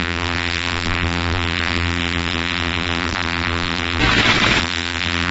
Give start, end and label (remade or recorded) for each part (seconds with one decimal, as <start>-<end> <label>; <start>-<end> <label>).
0.0-4.0 remade; 4.0-4.6 recorded; 4.6-5.3 remade